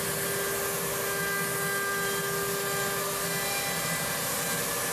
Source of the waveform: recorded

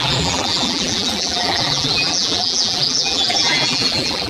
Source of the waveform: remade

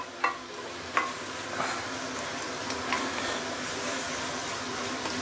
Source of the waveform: recorded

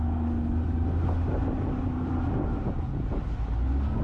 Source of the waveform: recorded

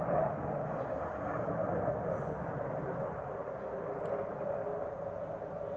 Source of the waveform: recorded